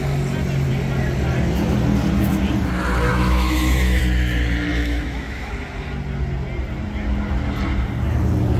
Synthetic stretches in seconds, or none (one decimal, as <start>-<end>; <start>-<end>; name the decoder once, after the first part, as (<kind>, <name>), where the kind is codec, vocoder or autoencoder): 3.1-4.0 (autoencoder, DAC-VAE); 4.7-5.5